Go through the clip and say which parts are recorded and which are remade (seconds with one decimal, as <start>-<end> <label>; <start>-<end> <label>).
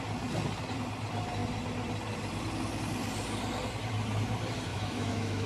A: 0.0-4.7 recorded; 4.7-5.5 remade